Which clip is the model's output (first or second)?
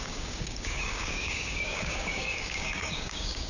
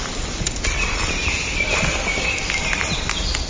first